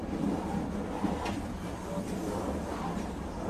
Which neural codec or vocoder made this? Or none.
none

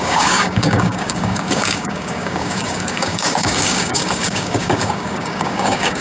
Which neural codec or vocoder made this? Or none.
codec, DAC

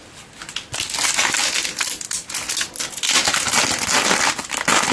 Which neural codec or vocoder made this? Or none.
none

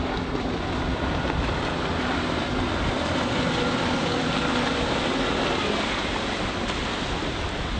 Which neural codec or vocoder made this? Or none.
none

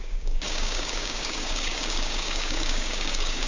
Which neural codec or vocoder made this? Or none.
codec, DAC